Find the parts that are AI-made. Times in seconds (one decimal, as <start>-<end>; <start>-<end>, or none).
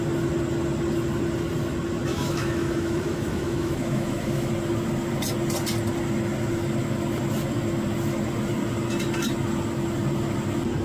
2.1-4.5